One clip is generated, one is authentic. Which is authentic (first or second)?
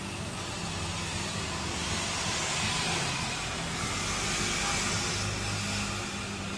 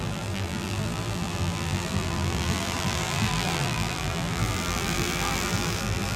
first